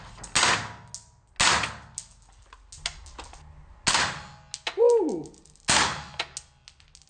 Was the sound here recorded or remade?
recorded